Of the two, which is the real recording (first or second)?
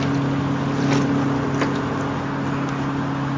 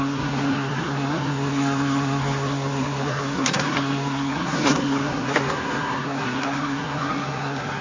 first